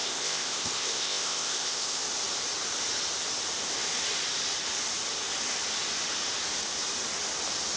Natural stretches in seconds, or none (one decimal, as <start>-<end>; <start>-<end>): 2.0-7.8